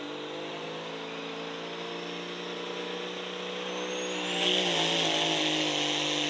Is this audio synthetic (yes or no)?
no